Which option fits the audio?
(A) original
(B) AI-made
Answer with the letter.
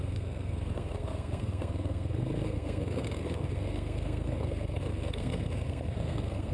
B